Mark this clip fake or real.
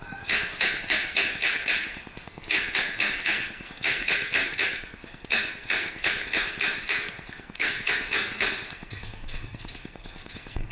fake